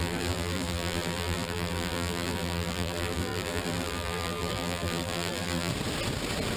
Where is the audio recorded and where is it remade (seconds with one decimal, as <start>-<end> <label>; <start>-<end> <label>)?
0.0-5.7 remade; 5.7-6.6 recorded